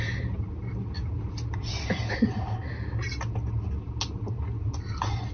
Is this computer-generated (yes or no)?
no